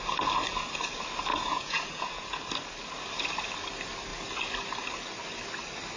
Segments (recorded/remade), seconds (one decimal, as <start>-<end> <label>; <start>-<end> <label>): 0.0-1.3 recorded; 1.3-2.4 remade; 2.4-6.0 recorded